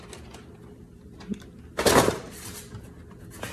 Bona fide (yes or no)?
yes